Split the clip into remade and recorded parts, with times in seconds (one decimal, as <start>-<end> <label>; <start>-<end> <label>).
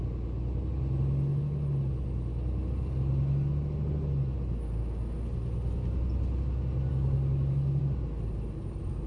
0.0-6.9 recorded; 6.9-7.8 remade; 7.8-9.1 recorded